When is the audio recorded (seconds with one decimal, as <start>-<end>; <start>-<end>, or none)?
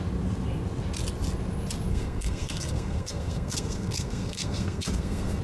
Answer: 0.0-1.9